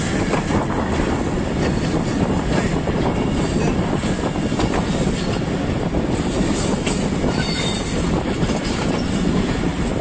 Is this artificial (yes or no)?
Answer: no